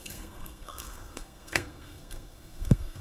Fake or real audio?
fake